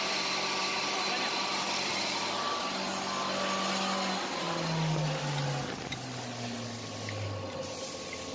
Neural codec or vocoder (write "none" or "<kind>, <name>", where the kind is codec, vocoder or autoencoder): none